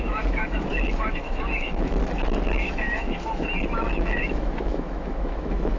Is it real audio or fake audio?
fake